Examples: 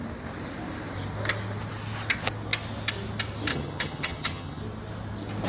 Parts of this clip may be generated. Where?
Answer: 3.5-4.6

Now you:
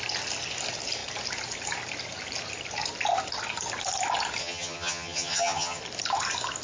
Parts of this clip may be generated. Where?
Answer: 4.4-5.8